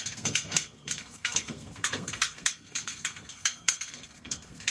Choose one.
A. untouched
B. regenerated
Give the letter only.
B